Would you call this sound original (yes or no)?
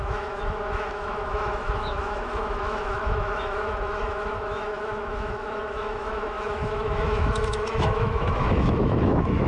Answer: no